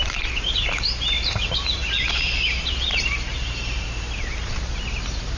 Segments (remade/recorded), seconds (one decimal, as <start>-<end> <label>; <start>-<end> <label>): 0.0-5.4 remade